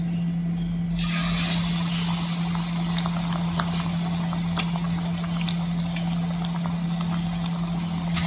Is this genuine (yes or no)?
yes